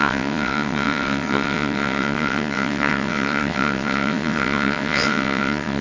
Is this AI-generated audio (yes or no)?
yes